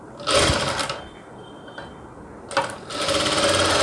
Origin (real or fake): real